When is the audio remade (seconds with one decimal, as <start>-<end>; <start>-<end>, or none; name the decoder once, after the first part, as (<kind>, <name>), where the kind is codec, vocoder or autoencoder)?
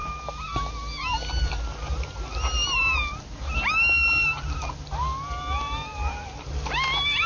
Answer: none